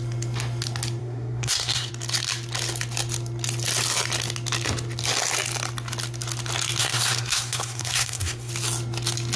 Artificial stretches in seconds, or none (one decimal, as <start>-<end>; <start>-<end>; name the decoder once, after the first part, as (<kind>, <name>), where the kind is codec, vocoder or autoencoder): 1.0-1.9 (codec, SNAC); 6.8-8.5